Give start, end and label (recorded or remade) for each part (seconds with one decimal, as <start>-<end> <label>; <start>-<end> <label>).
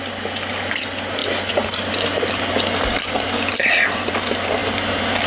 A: 0.0-5.3 recorded